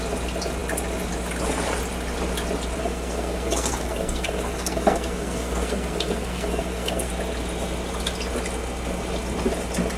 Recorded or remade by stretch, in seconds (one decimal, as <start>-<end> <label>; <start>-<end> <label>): 0.0-2.8 recorded; 2.8-7.1 remade; 7.1-10.0 recorded